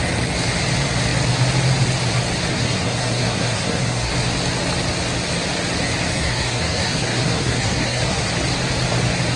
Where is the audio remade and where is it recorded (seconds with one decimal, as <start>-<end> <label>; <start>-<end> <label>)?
0.0-2.5 recorded; 2.5-4.1 remade; 4.1-6.1 recorded; 6.1-8.3 remade; 8.3-9.4 recorded